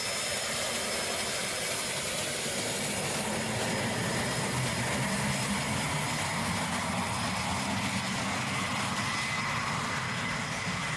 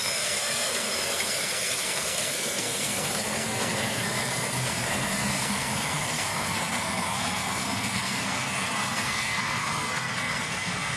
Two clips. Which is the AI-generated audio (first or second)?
second